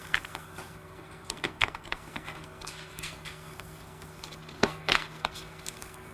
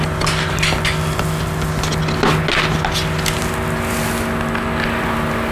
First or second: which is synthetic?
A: first